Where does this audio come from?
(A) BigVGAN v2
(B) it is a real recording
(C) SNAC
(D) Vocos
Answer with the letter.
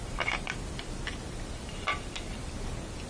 B